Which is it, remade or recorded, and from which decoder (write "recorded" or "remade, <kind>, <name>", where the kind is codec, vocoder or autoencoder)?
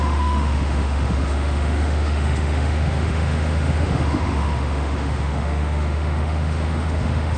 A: remade, autoencoder, DAC-VAE